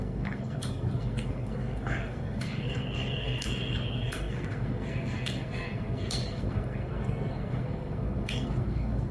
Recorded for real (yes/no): no